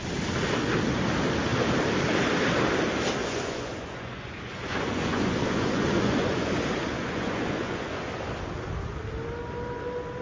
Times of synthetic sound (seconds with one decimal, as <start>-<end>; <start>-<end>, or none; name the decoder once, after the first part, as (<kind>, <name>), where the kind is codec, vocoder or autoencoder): 3.2-6.5 (vocoder, Vocos); 7.0-8.0